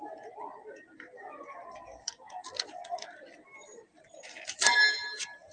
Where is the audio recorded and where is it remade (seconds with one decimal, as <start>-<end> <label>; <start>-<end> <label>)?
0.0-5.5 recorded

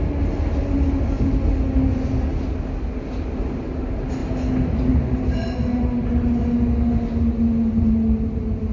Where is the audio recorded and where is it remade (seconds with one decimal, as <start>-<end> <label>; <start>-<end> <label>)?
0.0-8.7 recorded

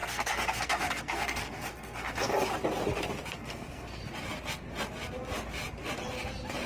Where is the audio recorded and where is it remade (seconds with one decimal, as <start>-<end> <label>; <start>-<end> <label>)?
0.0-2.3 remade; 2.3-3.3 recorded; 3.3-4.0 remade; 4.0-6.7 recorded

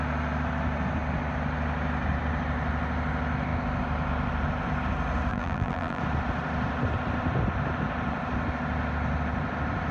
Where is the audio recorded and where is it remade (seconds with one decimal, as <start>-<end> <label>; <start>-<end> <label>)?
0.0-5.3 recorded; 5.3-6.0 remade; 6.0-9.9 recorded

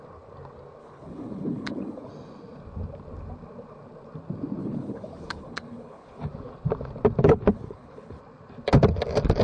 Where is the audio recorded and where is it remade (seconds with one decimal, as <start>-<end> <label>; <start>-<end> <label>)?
0.0-0.8 recorded; 0.8-2.1 remade; 2.1-4.6 recorded; 4.6-6.3 remade; 6.3-7.2 recorded; 7.2-8.2 remade; 8.2-9.4 recorded

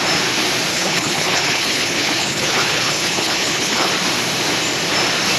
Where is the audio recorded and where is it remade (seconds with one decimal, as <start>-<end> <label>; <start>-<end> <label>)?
0.0-0.7 recorded; 0.7-3.9 remade; 3.9-5.4 recorded